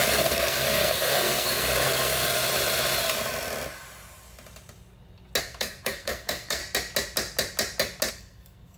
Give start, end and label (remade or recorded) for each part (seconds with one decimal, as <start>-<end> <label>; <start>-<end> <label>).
0.0-2.4 remade; 2.4-5.4 recorded; 5.4-6.6 remade; 6.6-8.1 recorded; 8.1-8.8 remade